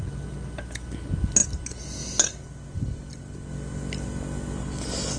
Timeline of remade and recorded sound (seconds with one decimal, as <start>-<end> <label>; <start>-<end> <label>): 0.0-5.2 recorded